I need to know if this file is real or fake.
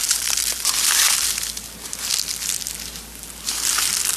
real